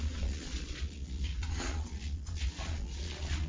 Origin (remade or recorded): remade